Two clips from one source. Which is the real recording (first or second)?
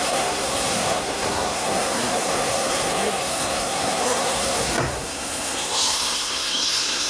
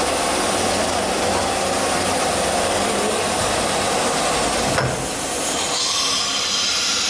second